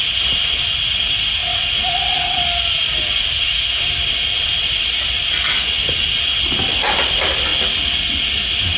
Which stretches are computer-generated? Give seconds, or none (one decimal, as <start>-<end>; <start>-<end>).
none